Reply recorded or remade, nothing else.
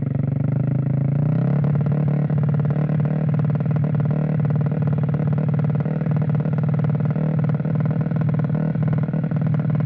recorded